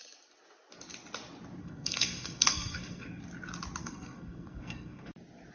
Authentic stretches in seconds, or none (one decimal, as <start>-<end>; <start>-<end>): 0.0-1.6; 3.2-3.8; 5.1-5.5